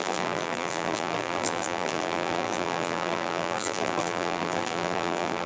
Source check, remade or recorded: remade